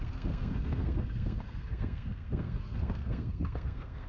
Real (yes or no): no